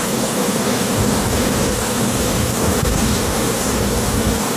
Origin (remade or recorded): remade